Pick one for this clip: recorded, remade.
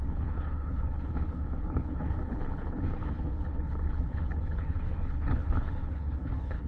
remade